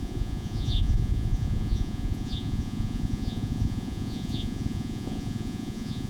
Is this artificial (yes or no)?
yes